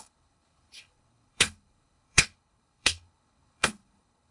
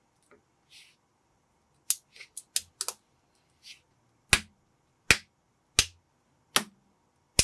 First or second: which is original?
second